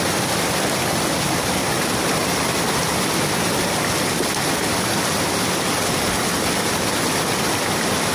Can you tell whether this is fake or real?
real